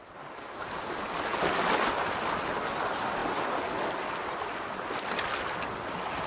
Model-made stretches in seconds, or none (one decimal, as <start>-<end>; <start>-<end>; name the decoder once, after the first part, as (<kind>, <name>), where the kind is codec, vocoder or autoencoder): none